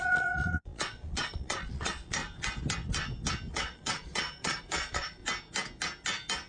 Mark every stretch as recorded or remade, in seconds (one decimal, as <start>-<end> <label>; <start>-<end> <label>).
0.0-2.2 remade; 2.2-3.5 recorded; 3.5-5.2 remade; 5.2-6.5 recorded